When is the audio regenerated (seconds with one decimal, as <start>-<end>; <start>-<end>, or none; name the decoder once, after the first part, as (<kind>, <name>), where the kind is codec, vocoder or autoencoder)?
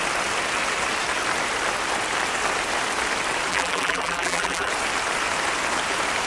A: 3.5-4.7 (vocoder, BigVGAN v2)